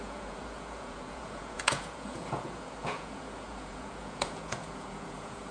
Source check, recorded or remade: remade